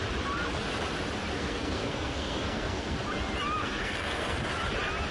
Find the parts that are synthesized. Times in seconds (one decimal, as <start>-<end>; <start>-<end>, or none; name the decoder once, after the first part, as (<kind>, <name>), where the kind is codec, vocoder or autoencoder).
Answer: 1.3-3.0 (codec, SNAC); 3.6-4.4